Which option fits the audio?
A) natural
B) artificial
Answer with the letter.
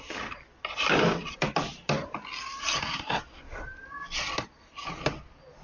A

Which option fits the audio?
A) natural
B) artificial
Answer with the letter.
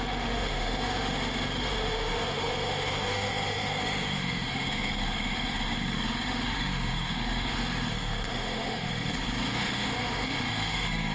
B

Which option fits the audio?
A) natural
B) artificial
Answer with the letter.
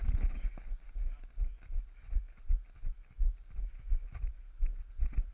A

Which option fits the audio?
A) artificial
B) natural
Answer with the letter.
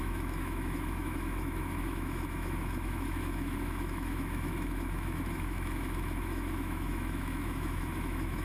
A